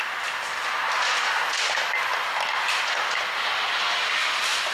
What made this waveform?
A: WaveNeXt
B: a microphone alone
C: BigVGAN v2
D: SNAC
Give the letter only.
B